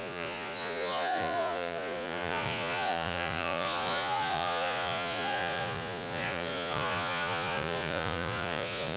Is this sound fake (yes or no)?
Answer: yes